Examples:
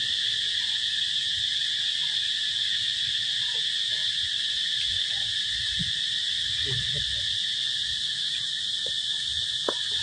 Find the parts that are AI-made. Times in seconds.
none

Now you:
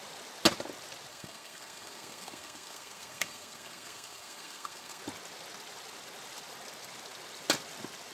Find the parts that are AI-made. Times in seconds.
1.1-5.0 (codec, SNAC)

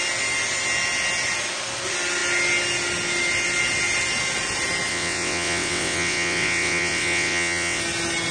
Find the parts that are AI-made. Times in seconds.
4.9-7.8 (vocoder, WaveNeXt)

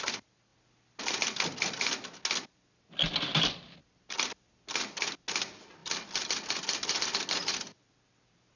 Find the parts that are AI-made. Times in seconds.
none

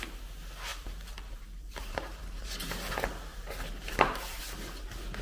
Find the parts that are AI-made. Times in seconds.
0.7-2.9 (vocoder, BigVGAN v2); 3.3-4.4

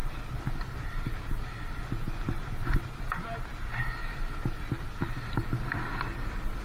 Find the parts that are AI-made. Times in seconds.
none

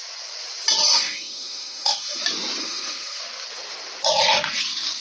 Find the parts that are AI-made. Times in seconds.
0.9-2.2 (autoencoder, DAC-VAE); 2.6-3.2

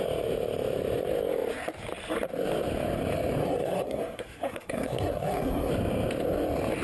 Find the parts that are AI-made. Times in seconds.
3.4-5.7 (codec, SNAC)